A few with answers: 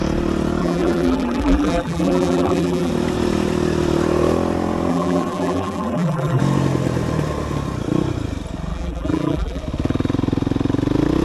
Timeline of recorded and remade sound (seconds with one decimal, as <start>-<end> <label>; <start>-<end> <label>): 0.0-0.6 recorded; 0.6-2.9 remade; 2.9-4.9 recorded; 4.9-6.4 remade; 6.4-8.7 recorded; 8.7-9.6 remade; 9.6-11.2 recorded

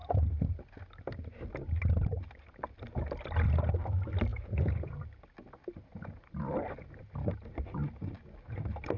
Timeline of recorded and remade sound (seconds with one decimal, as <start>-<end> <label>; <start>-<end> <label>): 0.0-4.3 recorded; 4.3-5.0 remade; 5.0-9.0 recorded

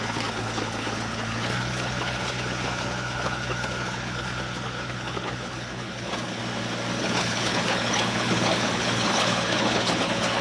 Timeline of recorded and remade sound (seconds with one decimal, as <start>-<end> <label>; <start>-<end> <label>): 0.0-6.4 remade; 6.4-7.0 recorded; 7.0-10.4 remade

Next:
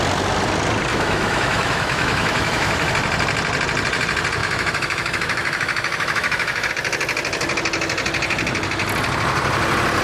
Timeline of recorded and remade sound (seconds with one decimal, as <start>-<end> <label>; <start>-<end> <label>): 0.0-0.9 recorded; 0.9-2.9 remade; 2.9-4.4 recorded; 4.4-6.7 remade; 6.7-10.0 recorded

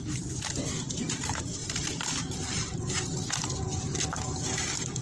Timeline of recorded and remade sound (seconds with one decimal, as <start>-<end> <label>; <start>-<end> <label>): 0.0-5.0 remade

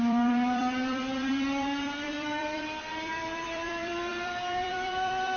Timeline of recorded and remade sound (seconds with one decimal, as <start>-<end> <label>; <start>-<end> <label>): 0.0-5.4 remade

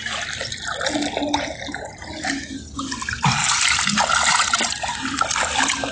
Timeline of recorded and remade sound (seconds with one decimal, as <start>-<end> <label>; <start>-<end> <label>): 0.0-5.9 recorded